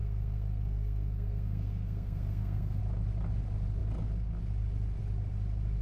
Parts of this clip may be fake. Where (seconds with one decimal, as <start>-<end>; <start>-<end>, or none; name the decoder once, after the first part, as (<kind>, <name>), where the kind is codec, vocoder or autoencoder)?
0.0-2.8 (codec, SNAC)